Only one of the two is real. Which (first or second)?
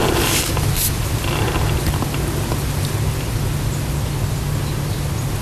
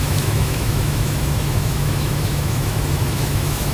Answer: first